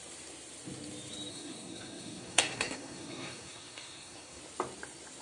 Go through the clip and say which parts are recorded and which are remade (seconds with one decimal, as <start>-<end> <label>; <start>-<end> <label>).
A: 0.0-1.3 recorded; 1.3-4.4 remade; 4.4-5.2 recorded